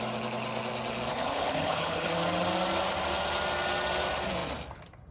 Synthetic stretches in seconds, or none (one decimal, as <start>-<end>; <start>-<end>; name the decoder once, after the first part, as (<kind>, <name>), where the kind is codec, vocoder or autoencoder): 1.1-2.1 (codec, HILCodec)